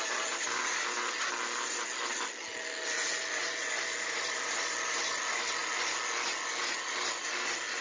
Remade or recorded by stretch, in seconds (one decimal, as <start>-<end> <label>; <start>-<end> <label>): 0.0-7.8 recorded